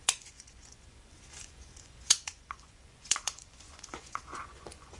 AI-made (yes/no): yes